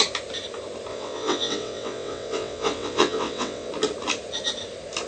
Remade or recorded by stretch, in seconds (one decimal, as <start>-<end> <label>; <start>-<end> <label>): 0.0-0.9 recorded; 0.9-3.7 remade; 3.7-5.1 recorded